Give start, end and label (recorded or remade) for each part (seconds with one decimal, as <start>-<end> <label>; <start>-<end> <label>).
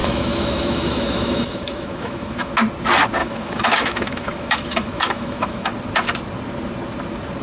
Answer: 0.0-2.5 remade; 2.5-3.2 recorded; 3.2-5.7 remade; 5.7-7.4 recorded